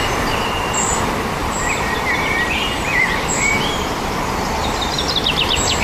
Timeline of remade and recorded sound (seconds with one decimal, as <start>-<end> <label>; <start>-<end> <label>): 0.0-1.4 recorded; 1.4-4.9 remade; 4.9-5.8 recorded